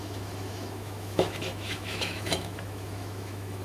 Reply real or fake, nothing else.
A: fake